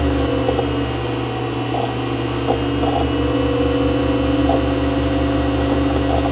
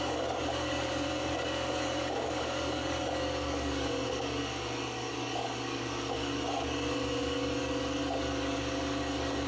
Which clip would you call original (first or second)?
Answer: first